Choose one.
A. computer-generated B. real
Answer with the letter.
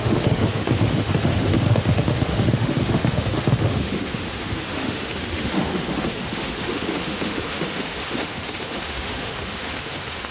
A